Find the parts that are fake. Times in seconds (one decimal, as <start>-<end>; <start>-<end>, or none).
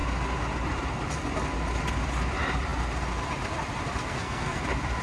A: 4.0-4.6